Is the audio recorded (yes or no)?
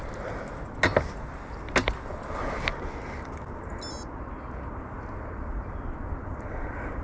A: yes